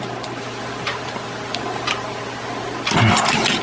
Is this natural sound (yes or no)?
yes